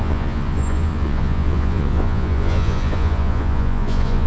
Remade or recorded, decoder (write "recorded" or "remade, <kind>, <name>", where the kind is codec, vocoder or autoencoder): remade, vocoder, Vocos